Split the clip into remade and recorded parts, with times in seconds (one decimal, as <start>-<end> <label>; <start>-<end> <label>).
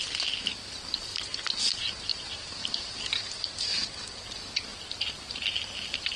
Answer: 0.0-2.1 recorded; 2.1-2.9 remade; 2.9-4.7 recorded; 4.7-6.2 remade